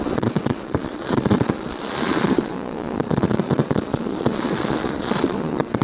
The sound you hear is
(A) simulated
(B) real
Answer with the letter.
A